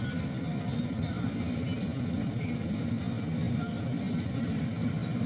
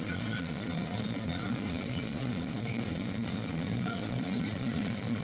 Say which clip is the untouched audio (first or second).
first